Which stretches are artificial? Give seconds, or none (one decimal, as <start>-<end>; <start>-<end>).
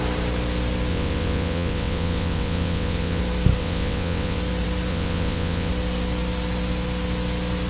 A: 0.9-3.2; 3.6-4.4; 4.9-5.7